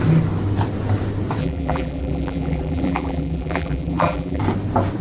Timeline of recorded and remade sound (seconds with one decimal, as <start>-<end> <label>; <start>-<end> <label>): 0.0-1.4 recorded; 1.4-4.4 remade; 4.4-5.0 recorded